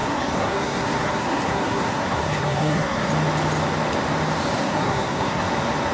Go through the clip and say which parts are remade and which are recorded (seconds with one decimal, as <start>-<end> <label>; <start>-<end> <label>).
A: 0.0-3.1 remade; 3.1-4.5 recorded; 4.5-5.5 remade; 5.5-5.9 recorded